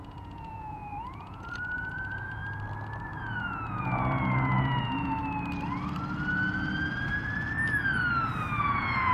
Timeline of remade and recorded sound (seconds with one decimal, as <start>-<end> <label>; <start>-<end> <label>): 0.0-2.4 remade; 2.4-3.7 recorded; 3.7-5.2 remade; 5.2-8.6 recorded; 8.6-9.1 remade